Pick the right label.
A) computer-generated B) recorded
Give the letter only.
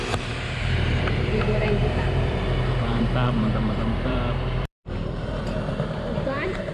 A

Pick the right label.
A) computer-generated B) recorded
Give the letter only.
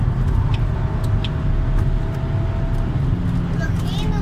B